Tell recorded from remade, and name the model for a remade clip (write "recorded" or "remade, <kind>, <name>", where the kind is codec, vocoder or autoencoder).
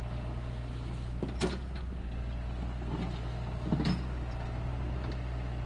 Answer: recorded